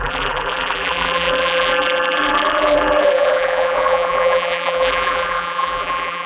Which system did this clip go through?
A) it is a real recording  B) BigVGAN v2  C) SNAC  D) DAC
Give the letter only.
B